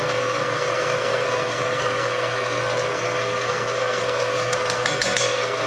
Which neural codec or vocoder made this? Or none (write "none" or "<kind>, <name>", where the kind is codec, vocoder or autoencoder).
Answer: codec, SNAC